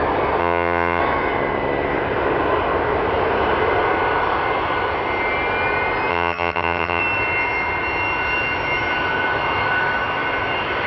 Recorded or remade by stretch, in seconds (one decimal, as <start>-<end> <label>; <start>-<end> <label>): 0.0-0.4 recorded; 0.4-1.0 remade; 1.0-6.1 recorded; 6.1-7.0 remade; 7.0-10.9 recorded